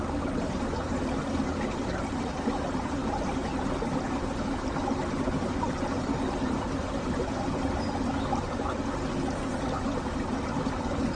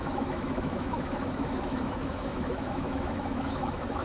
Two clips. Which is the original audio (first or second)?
first